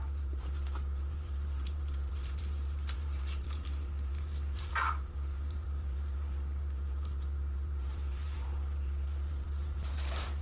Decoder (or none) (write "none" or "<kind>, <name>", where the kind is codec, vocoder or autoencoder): vocoder, BigVGAN v2